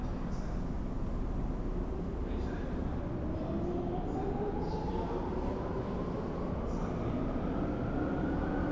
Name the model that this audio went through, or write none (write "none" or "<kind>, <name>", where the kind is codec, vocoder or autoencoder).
none